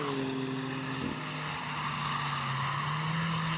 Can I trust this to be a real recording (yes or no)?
yes